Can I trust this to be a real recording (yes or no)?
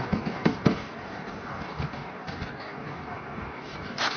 no